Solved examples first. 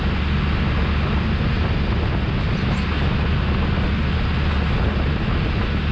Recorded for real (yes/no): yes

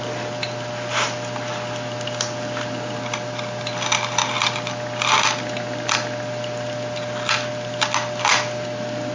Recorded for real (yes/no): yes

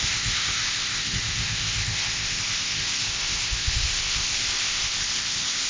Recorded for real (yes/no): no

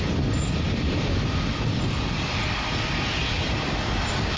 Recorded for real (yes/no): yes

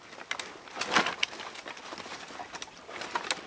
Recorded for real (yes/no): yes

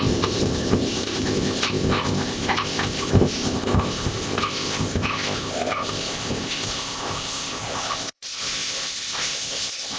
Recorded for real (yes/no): no